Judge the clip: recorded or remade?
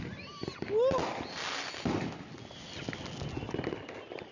recorded